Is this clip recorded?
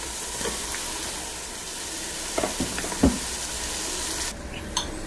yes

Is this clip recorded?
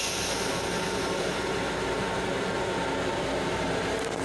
yes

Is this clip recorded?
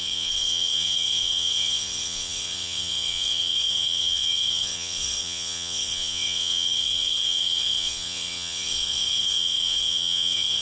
no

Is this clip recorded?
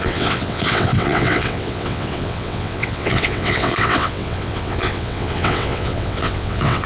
no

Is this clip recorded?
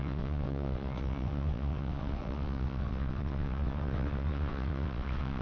no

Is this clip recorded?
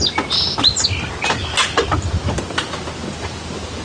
yes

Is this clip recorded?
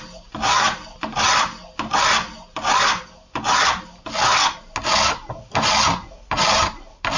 yes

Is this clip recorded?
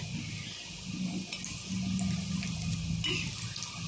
yes